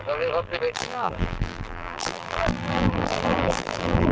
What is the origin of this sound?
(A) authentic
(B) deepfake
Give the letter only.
B